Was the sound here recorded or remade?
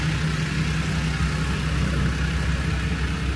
recorded